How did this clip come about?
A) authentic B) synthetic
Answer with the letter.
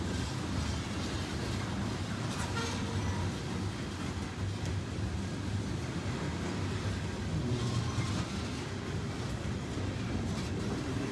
A